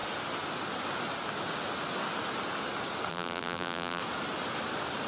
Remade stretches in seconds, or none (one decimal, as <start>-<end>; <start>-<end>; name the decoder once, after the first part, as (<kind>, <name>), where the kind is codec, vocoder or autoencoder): 3.1-4.0 (vocoder, BigVGAN v2)